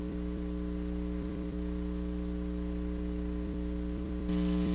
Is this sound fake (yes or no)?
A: yes